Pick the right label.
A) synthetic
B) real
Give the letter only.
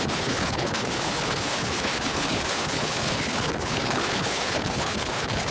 A